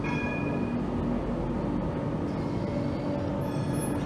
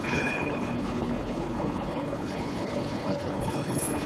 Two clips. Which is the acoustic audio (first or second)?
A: first